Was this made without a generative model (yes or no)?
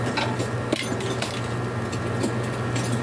yes